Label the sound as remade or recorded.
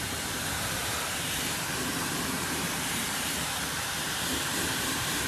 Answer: remade